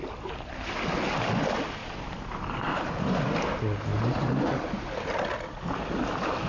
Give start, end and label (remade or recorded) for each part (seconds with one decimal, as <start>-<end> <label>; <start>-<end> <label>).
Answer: 0.0-1.8 recorded; 1.8-2.9 remade; 2.9-3.9 recorded; 3.9-4.9 remade; 4.9-6.5 recorded